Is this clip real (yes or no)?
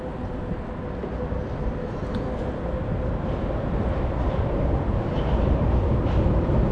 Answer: yes